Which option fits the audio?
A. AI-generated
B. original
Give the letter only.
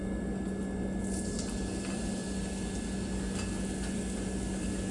B